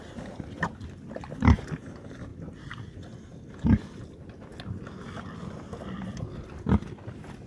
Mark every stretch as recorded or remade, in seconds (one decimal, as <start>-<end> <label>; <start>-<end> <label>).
0.0-7.5 recorded